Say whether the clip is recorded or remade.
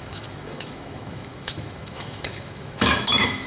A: remade